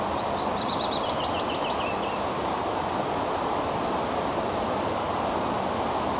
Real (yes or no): yes